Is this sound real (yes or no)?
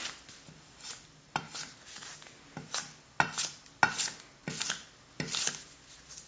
yes